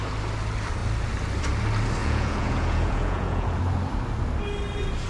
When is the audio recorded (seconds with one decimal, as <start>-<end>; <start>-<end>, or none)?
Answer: 0.0-2.0; 3.6-5.1